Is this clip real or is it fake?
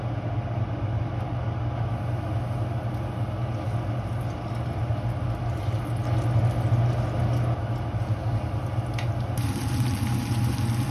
real